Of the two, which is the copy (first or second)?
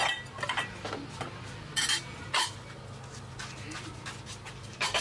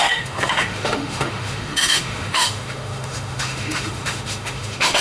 second